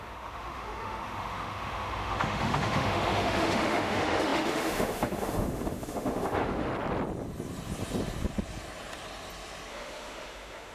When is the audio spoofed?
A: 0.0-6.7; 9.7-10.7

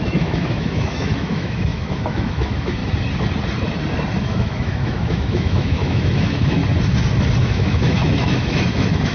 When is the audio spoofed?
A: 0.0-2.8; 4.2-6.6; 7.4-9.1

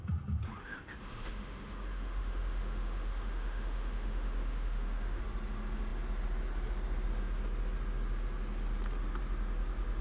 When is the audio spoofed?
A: 0.6-5.2

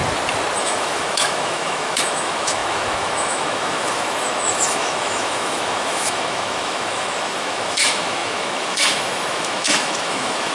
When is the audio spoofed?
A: 0.6-10.5

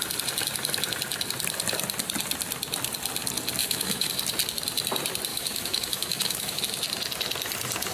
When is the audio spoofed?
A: 3.6-4.1; 5.3-6.6

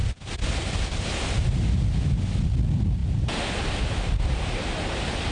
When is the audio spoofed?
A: none